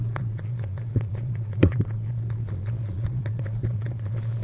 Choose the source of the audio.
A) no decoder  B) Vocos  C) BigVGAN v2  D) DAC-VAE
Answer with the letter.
B